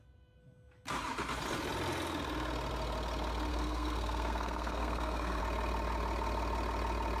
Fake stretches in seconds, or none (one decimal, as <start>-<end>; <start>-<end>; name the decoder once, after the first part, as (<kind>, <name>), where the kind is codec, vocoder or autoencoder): 3.5-5.4 (codec, SNAC)